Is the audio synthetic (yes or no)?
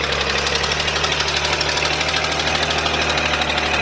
no